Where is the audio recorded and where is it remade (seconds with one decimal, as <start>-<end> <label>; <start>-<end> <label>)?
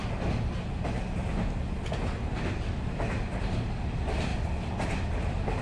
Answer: 0.0-3.4 recorded; 3.4-4.3 remade; 4.3-5.6 recorded